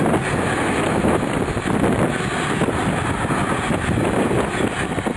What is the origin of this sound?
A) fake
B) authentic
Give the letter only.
B